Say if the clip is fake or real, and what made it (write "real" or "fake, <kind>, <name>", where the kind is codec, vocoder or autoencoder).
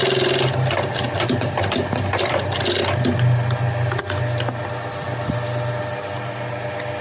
real